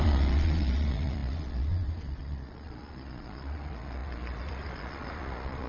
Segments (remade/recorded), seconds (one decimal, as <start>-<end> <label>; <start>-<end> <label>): 0.0-5.7 remade